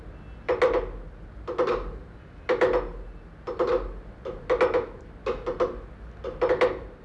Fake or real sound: real